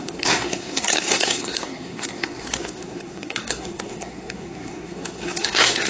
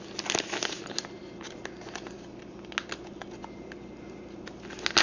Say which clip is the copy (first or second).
first